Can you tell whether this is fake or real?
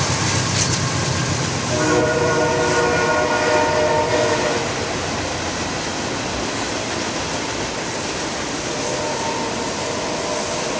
real